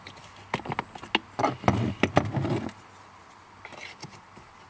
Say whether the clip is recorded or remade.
recorded